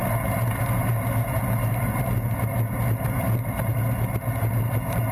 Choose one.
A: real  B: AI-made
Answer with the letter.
A